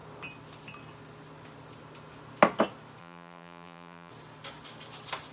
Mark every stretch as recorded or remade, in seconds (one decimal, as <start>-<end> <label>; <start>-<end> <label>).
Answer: 0.0-3.0 recorded; 3.0-4.1 remade; 4.1-5.3 recorded